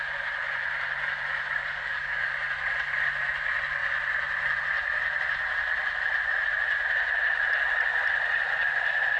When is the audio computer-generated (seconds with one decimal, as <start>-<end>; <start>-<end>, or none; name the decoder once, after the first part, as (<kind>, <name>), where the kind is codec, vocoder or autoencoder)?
1.6-2.3 (codec, DAC)